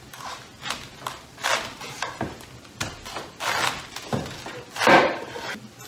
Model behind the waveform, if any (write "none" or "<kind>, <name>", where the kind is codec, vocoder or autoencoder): none